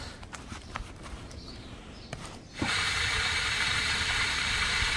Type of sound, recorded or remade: remade